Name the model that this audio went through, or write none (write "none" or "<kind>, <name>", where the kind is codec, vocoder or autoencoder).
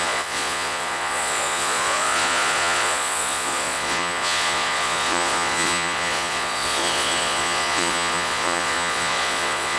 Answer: vocoder, Vocos